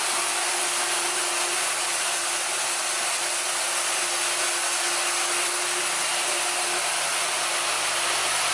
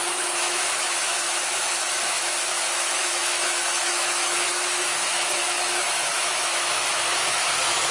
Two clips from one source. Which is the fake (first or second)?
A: second